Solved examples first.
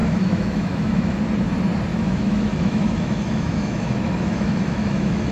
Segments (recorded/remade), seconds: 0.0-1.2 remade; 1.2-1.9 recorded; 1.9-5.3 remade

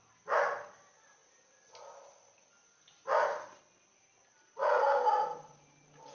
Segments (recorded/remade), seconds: 0.0-6.1 recorded

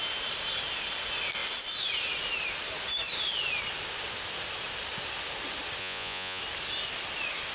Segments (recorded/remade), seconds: 0.0-5.8 recorded; 5.8-6.4 remade; 6.4-7.5 recorded